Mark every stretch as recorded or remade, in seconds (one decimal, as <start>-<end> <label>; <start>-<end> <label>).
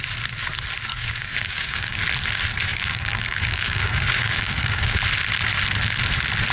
0.0-0.9 recorded; 0.9-2.0 remade; 2.0-2.7 recorded; 2.7-5.0 remade; 5.0-6.5 recorded